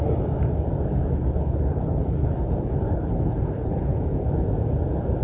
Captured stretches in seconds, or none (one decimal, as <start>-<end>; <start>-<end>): 0.0-0.9; 4.0-5.2